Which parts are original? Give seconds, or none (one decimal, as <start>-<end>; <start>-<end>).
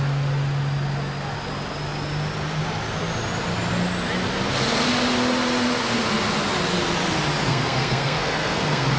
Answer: 0.0-7.5